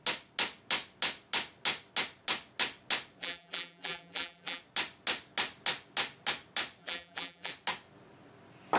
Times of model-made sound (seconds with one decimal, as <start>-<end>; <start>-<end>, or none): 3.2-4.6; 6.8-7.5